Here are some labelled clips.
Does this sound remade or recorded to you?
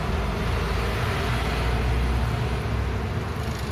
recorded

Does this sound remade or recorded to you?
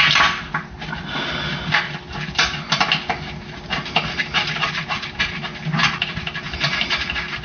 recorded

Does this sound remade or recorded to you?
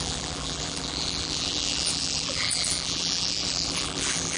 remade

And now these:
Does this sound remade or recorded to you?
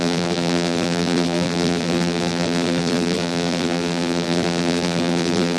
remade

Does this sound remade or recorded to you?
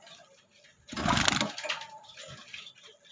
recorded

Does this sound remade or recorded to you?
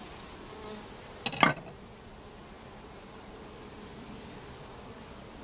recorded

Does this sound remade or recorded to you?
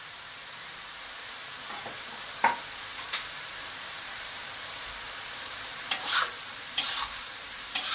remade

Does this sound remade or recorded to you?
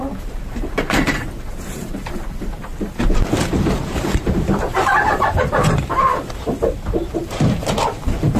remade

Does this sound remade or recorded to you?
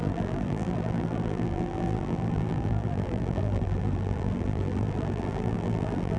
remade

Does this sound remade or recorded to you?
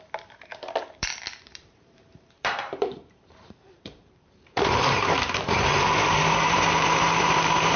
remade